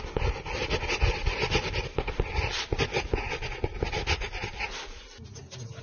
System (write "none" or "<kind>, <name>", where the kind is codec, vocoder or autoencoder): none